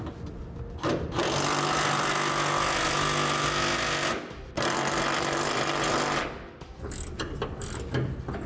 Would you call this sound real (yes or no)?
yes